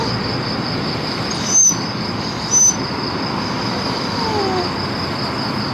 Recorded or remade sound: recorded